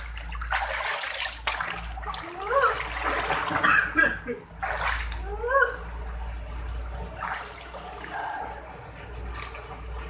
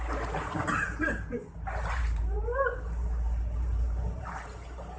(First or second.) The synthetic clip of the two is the second